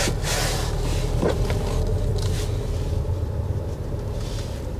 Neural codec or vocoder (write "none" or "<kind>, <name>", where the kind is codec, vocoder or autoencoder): none